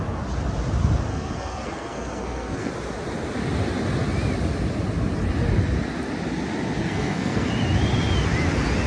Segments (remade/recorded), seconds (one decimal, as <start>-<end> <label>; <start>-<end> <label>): 0.0-1.1 recorded; 1.1-2.7 remade; 2.7-6.8 recorded; 6.8-7.5 remade; 7.5-8.9 recorded